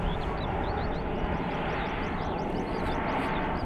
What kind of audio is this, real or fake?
real